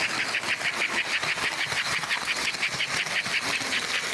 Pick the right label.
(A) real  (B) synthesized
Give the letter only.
A